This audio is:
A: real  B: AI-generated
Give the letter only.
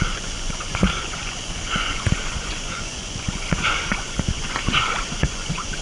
B